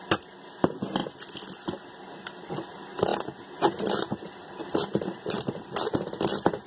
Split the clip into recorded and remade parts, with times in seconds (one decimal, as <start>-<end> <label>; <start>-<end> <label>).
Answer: 0.0-6.7 recorded